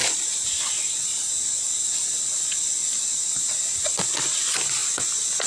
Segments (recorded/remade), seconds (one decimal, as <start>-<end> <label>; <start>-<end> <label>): 0.0-5.5 recorded